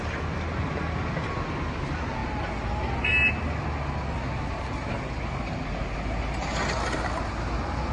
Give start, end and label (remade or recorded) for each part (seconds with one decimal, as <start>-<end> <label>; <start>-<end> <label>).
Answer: 0.0-7.9 recorded